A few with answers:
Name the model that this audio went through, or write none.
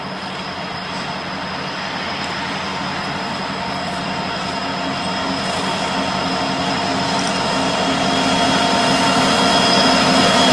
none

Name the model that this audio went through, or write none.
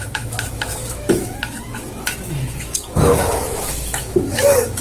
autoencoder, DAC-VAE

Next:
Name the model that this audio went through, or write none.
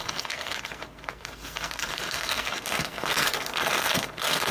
codec, SNAC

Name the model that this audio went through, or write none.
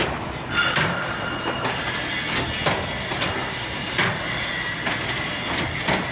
none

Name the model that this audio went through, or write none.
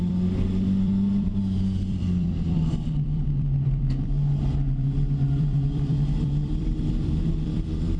vocoder, BigVGAN v2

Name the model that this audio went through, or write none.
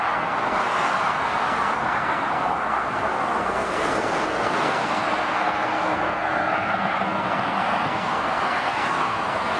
codec, SNAC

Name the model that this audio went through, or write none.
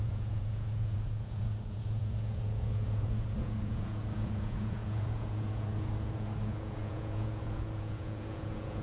vocoder, Vocos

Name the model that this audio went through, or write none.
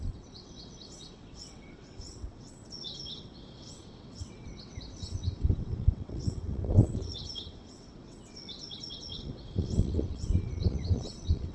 vocoder, WaveNeXt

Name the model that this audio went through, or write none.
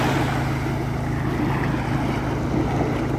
none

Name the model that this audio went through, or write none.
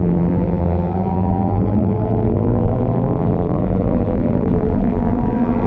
vocoder, BigVGAN v2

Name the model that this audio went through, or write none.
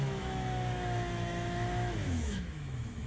autoencoder, DAC-VAE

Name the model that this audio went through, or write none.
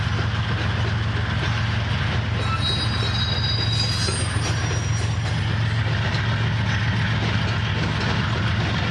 none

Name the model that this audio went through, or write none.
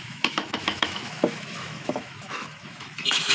autoencoder, DAC-VAE